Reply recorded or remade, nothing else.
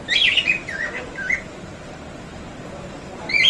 recorded